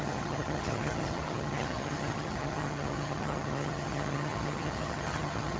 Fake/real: fake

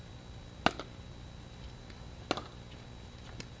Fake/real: real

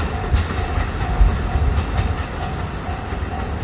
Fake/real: real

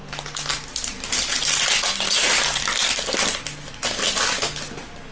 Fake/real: real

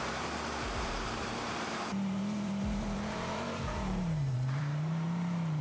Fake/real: fake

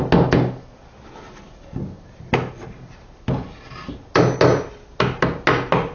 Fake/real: real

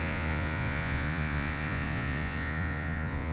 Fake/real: fake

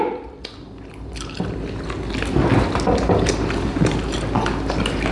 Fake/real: real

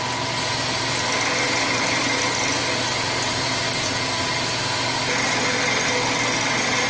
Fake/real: real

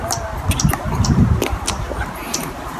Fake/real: real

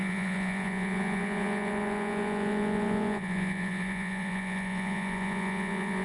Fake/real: fake